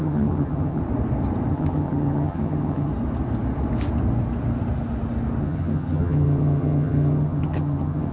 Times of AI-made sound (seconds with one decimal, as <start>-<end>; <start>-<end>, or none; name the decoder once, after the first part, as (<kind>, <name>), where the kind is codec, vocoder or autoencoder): 0.0-0.8 (vocoder, HiFi-GAN); 1.5-2.9; 5.4-8.1